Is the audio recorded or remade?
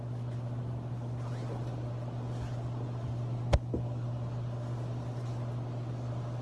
recorded